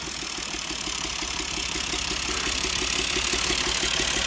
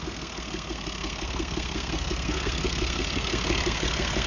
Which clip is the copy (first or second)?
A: second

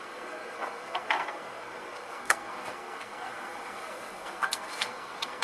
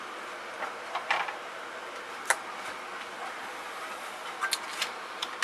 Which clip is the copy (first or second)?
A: first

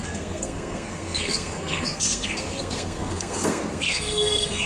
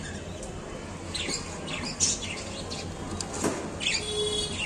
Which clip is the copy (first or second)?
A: first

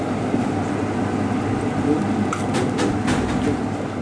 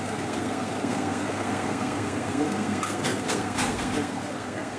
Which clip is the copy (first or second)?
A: second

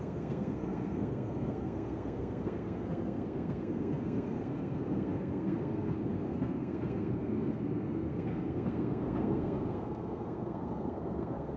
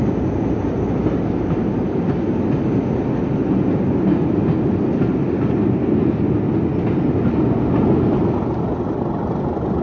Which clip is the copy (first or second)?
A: first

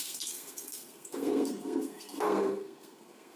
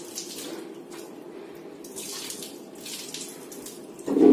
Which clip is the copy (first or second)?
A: first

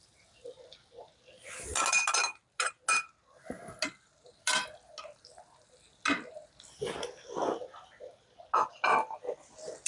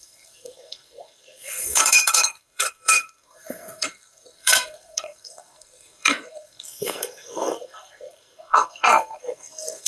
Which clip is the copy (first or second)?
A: second